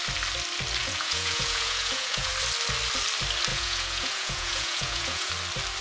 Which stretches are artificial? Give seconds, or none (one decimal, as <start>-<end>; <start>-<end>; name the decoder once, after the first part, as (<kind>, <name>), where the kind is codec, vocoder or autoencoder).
0.8-2.3 (vocoder, Vocos); 3.5-5.3